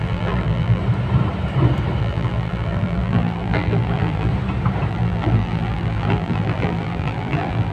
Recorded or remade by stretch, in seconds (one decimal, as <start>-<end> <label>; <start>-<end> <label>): 0.0-0.8 remade; 0.8-2.0 recorded; 2.0-4.3 remade; 4.3-4.9 recorded; 4.9-7.7 remade